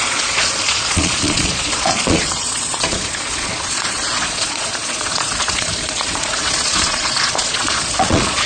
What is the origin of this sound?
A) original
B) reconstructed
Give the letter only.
B